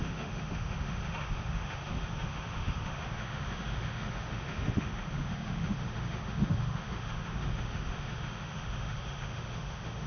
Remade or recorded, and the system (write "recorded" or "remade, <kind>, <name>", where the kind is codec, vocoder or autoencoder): remade, autoencoder, DAC-VAE